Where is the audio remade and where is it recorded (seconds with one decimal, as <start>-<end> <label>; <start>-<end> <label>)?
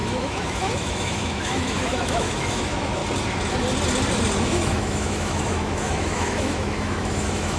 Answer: 0.0-3.0 remade; 3.0-4.4 recorded; 4.4-7.6 remade